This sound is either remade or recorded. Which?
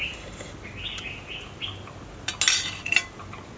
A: recorded